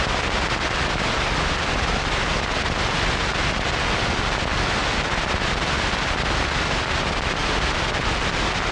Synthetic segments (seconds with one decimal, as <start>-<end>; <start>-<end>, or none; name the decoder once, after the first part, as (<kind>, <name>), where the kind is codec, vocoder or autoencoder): none